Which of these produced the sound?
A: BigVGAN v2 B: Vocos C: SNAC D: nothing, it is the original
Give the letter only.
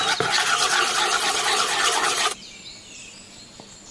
D